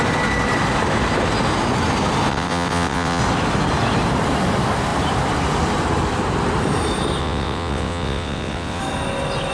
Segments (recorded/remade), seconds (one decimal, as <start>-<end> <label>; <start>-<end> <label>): 0.0-2.3 recorded; 2.3-3.2 remade; 3.2-7.2 recorded; 7.2-8.8 remade; 8.8-9.5 recorded